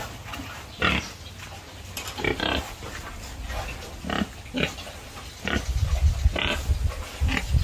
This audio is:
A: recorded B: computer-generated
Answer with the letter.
A